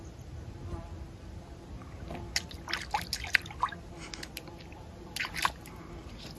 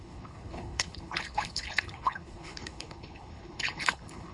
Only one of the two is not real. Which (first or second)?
second